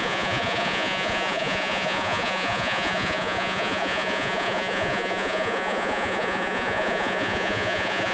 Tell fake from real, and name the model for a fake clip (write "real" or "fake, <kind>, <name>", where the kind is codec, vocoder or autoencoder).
fake, vocoder, Vocos